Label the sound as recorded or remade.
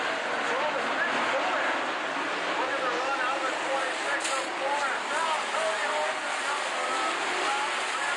recorded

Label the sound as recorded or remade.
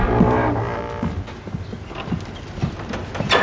recorded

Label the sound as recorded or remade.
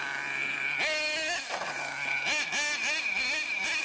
recorded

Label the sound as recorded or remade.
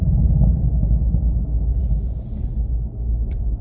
recorded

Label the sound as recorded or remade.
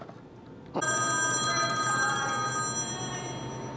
recorded